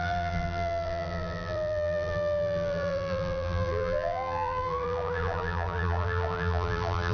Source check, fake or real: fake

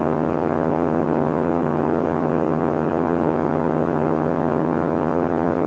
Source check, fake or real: fake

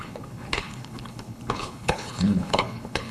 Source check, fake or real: fake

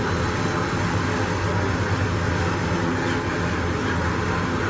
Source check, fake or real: real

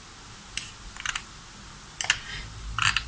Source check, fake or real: real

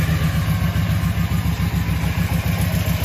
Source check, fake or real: real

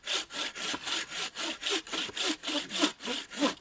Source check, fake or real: real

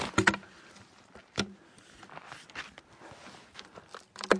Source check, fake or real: real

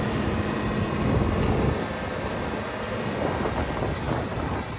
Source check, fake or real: real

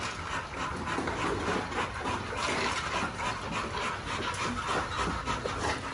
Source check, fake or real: real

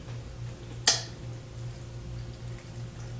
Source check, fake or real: real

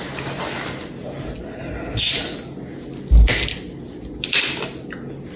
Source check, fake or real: real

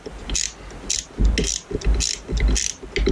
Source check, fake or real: real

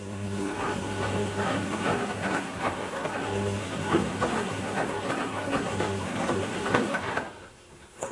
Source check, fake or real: fake